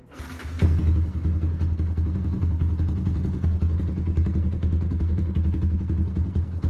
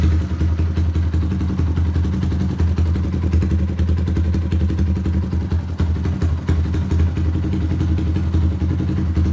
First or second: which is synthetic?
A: first